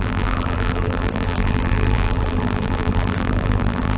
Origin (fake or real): fake